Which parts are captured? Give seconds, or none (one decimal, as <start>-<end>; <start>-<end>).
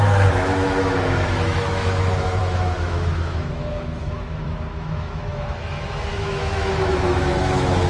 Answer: none